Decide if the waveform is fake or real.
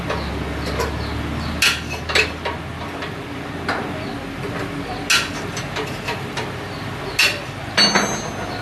real